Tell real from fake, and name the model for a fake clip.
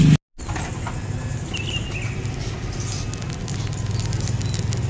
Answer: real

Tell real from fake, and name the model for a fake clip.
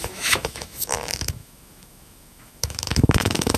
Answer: fake, autoencoder, DAC-VAE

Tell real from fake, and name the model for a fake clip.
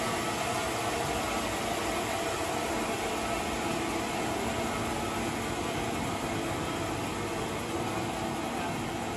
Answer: real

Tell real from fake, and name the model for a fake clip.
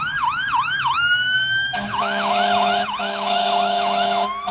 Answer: fake, autoencoder, DAC-VAE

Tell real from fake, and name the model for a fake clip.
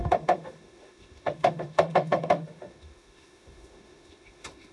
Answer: fake, autoencoder, DAC-VAE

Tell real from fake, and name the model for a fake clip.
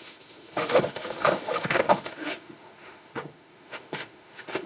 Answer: fake, autoencoder, DAC-VAE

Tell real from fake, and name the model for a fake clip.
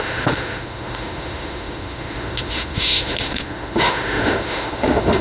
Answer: fake, autoencoder, DAC-VAE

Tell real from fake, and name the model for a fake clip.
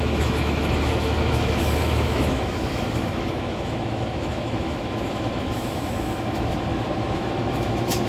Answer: fake, autoencoder, DAC-VAE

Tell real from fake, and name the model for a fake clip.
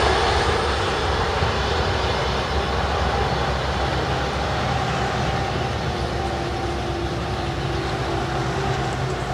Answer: real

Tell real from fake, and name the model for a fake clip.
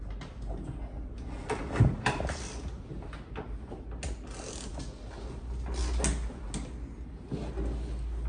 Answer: real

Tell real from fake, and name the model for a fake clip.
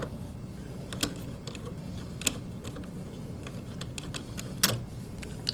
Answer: real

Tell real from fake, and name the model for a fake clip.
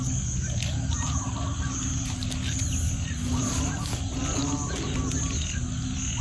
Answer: real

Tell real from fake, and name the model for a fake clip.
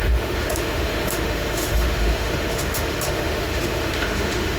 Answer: fake, autoencoder, DAC-VAE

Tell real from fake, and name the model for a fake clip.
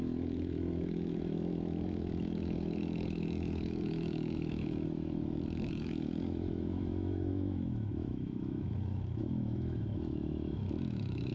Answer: fake, autoencoder, DAC-VAE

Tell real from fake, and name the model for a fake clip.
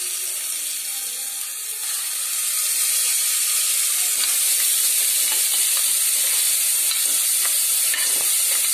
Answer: real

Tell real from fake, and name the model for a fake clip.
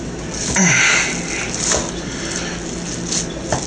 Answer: real